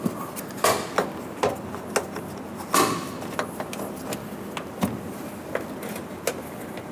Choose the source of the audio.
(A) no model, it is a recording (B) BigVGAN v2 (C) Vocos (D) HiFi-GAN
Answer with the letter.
A